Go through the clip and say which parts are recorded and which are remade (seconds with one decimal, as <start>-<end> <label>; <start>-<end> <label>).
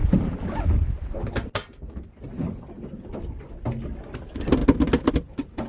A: 0.0-5.7 recorded